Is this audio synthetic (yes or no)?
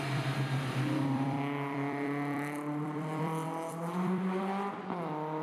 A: yes